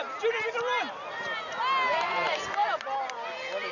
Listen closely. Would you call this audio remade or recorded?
recorded